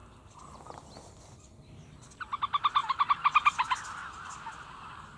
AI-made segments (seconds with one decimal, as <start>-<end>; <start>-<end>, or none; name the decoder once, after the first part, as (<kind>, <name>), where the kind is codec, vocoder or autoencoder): none